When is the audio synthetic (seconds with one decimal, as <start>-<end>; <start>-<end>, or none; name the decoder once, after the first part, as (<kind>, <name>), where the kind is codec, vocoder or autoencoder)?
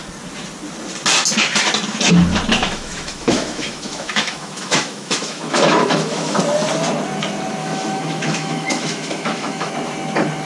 2.6-6.4 (autoencoder, DAC-VAE); 7.6-9.7